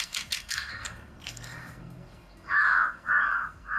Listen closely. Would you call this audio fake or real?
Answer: fake